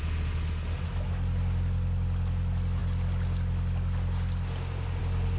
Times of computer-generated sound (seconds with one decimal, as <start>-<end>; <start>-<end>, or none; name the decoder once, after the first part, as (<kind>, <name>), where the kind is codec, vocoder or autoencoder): none